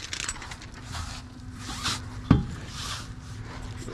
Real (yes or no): yes